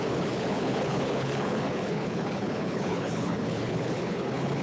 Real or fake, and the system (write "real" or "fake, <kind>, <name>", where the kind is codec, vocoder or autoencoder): fake, codec, HILCodec